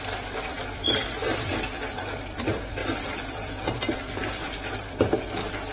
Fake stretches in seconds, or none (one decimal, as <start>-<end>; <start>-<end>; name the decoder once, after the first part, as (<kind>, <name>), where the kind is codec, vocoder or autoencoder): 0.5-2.4 (vocoder, BigVGAN v2); 2.8-5.3